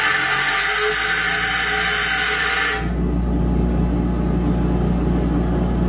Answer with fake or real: real